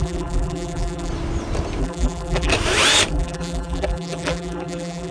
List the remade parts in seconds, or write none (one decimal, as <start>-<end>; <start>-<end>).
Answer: 0.0-1.1; 1.8-2.5; 3.1-5.1